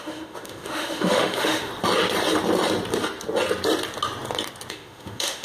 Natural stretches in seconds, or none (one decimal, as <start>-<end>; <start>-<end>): 1.7-4.7